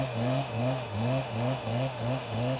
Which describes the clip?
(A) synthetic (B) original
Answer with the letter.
A